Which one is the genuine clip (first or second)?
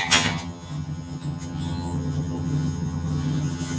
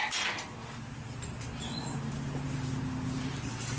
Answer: second